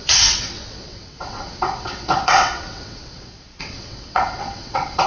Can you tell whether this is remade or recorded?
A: remade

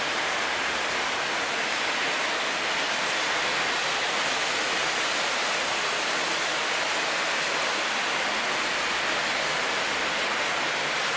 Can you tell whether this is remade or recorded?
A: recorded